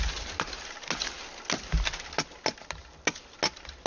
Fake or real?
real